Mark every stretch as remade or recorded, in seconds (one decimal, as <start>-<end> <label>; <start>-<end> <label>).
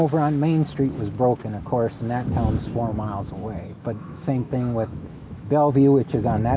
0.0-2.9 recorded; 2.9-5.7 remade; 5.7-6.6 recorded